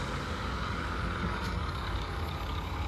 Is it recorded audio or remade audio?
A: remade